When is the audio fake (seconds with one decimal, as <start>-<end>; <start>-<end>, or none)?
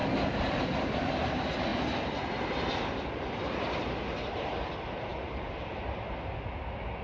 none